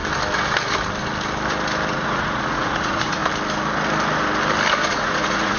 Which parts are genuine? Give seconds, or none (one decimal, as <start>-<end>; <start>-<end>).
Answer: 0.0-1.9; 3.2-4.8